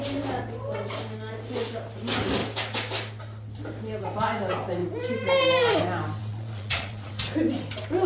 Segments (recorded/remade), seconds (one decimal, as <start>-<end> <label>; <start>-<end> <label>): 0.0-6.2 recorded; 6.2-7.1 remade; 7.1-8.1 recorded